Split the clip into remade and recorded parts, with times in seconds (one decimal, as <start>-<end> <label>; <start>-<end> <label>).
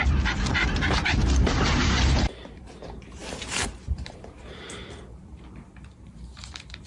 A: 0.0-6.9 remade